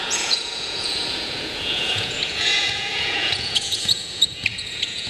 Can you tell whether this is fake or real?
fake